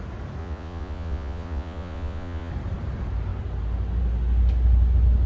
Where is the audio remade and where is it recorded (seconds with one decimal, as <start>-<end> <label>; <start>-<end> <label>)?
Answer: 0.0-0.4 recorded; 0.4-2.5 remade; 2.5-5.3 recorded

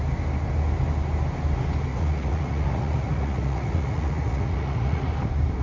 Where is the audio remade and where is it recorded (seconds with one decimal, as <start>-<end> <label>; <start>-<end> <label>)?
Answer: 0.0-1.9 recorded; 1.9-5.1 remade; 5.1-5.6 recorded

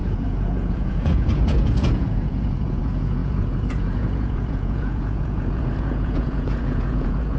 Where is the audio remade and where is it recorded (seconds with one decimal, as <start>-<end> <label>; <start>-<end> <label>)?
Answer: 0.0-7.4 remade

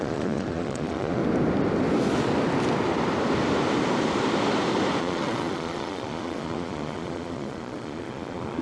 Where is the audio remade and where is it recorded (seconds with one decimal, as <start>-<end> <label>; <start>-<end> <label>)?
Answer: 0.0-1.2 remade; 1.2-5.0 recorded; 5.0-8.6 remade

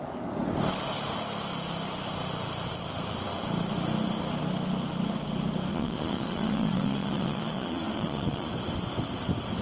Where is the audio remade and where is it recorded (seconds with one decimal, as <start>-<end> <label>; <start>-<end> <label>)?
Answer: 0.0-5.7 recorded; 5.7-8.5 remade; 8.5-9.6 recorded